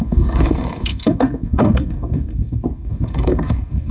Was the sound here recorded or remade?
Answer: remade